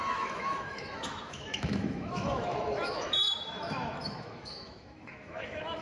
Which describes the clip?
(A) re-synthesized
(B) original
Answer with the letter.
A